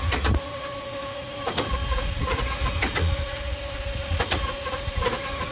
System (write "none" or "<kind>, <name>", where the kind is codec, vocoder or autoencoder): vocoder, Vocos